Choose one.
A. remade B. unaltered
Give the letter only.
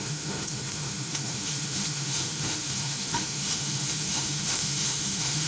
A